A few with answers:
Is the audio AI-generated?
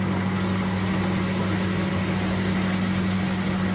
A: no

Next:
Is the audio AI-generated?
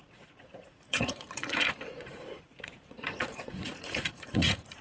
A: yes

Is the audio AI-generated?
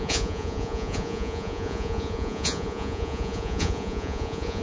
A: yes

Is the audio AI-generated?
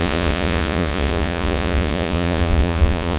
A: yes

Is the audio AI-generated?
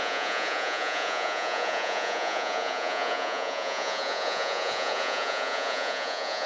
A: yes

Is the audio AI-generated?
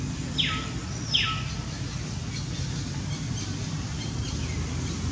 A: no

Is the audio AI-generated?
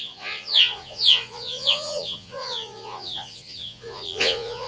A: yes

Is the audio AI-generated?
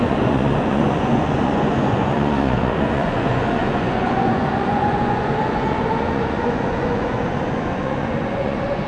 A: yes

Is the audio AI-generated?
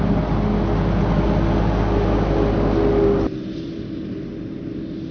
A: no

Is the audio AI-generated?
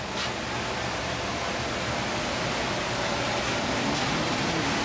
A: no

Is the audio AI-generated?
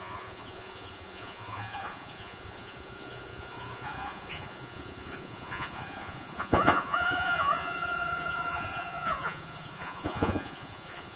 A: yes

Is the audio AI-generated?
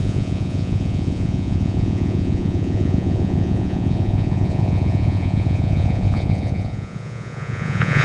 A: yes